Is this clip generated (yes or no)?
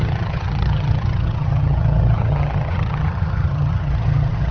yes